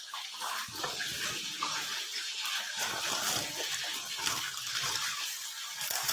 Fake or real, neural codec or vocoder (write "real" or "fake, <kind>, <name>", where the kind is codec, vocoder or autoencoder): real